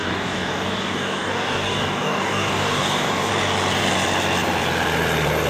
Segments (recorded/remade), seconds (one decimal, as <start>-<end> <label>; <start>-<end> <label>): 0.0-3.3 remade; 3.3-5.5 recorded